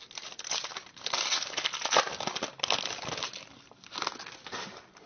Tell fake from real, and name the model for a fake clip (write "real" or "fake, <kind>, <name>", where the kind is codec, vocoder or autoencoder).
real